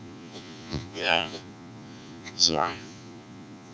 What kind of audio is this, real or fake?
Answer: fake